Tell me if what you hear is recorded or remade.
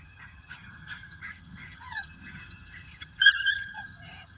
remade